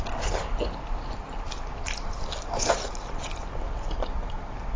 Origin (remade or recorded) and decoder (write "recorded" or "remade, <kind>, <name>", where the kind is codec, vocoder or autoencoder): recorded